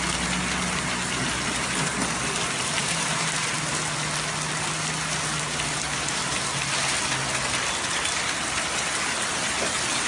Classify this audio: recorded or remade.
recorded